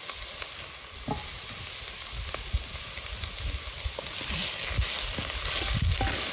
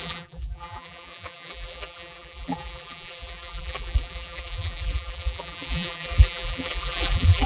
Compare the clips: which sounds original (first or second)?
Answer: first